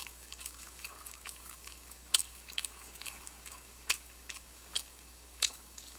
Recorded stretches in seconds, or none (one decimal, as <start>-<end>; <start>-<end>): none